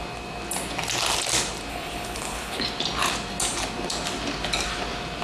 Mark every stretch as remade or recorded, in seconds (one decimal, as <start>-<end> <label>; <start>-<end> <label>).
0.0-1.7 recorded; 1.7-2.6 remade; 2.6-5.2 recorded